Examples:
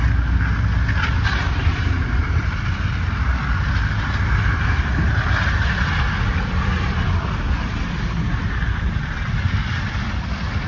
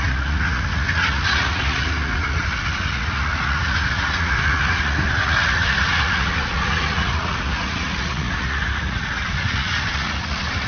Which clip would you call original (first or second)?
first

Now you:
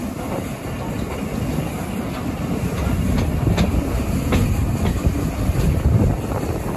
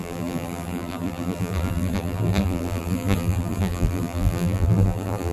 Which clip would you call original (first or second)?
first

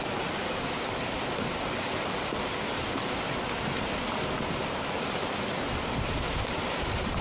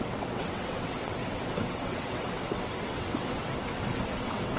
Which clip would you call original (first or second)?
first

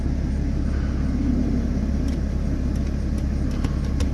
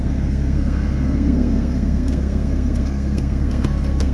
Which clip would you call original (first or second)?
first